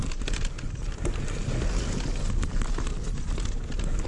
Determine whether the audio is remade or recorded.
recorded